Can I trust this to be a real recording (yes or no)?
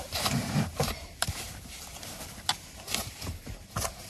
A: no